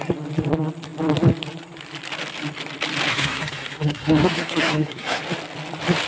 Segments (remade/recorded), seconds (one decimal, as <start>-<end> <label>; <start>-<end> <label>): 0.0-3.1 recorded; 3.1-5.2 remade; 5.2-6.1 recorded